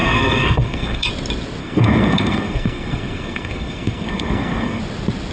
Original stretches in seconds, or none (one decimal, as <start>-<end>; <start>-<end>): 1.1-1.6; 4.8-5.3